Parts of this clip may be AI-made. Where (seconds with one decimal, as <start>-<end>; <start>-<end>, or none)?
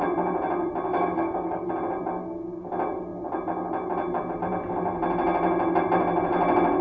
0.9-1.7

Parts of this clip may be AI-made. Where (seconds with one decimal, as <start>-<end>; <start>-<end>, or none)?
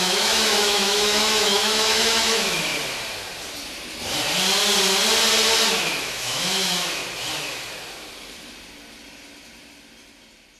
0.0-2.7; 6.0-7.0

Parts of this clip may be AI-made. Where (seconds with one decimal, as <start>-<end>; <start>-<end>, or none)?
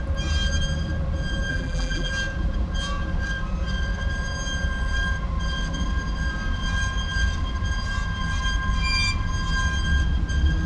1.5-2.1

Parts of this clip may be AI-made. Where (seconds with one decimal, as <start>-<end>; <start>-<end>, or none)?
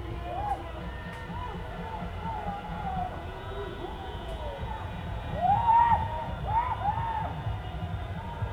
2.7-6.3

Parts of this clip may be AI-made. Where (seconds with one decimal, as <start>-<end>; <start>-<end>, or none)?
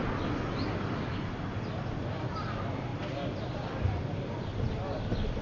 none